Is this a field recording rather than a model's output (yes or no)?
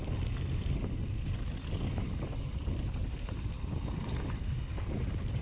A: yes